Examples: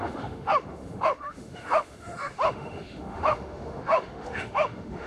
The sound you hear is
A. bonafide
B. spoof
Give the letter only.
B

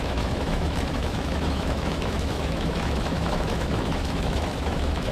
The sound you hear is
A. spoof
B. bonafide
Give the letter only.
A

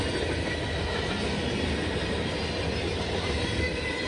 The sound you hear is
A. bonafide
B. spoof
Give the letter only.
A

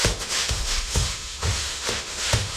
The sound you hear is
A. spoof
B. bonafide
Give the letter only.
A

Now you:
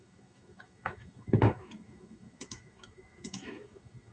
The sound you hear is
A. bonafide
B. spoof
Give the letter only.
B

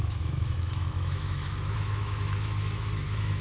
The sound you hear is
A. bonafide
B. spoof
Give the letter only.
B